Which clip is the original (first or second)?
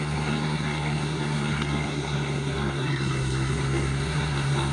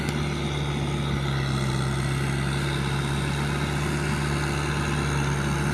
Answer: second